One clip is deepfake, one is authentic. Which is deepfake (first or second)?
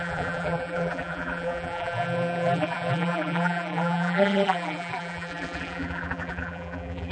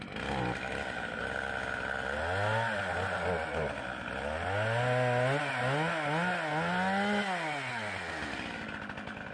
first